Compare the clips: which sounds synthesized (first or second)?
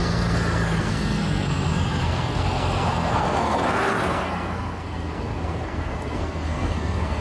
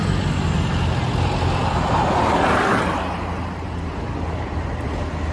first